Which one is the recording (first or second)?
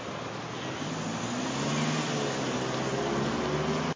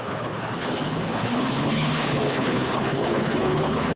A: first